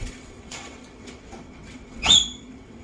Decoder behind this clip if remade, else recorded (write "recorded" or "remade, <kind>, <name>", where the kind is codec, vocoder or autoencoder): remade, vocoder, WaveNeXt